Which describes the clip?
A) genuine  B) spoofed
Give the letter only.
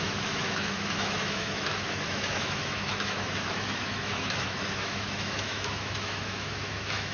B